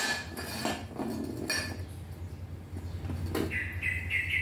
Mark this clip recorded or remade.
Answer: recorded